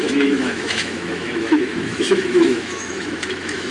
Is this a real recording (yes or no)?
no